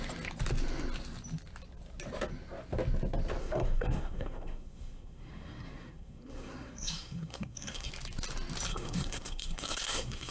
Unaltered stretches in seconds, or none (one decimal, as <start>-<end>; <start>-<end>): 0.0-3.4; 7.9-8.7